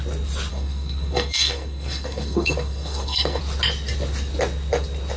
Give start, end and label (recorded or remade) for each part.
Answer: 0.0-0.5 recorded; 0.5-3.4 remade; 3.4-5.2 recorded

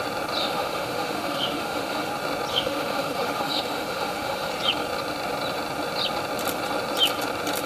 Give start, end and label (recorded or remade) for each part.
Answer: 0.0-0.4 recorded; 0.4-2.1 remade; 2.1-2.5 recorded; 2.5-4.5 remade; 4.5-7.7 recorded

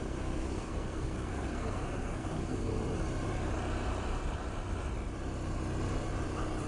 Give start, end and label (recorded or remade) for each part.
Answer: 0.0-2.7 remade; 2.7-6.7 recorded